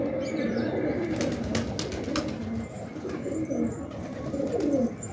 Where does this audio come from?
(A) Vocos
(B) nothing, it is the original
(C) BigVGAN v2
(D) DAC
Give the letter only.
B